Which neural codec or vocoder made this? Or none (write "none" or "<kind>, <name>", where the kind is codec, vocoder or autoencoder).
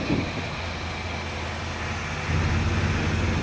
none